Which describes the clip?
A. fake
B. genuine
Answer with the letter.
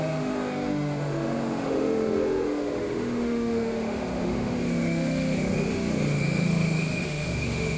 A